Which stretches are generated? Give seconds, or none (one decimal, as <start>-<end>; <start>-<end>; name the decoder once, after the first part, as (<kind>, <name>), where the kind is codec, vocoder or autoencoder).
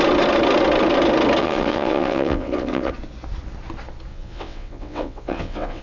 1.4-2.9 (vocoder, WaveNeXt); 4.1-5.8